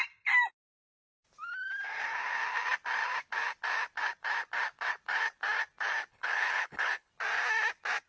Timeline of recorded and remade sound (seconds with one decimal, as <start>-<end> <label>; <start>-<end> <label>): 0.0-6.1 recorded; 6.1-7.1 remade; 7.1-8.1 recorded